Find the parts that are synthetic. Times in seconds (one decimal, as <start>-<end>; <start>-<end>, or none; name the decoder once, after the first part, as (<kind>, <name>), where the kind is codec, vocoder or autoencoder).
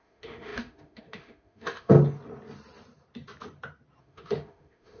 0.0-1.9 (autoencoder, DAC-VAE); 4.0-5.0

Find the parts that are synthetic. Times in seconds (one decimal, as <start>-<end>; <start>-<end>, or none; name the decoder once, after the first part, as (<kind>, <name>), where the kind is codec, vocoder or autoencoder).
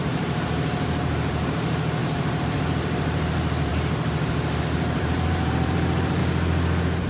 0.0-3.7 (vocoder, BigVGAN v2); 4.6-6.2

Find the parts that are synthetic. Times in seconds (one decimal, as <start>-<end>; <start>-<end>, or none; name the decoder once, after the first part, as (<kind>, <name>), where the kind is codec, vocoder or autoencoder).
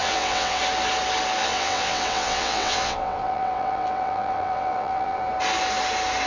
0.0-0.6 (vocoder, WaveNeXt); 1.4-5.2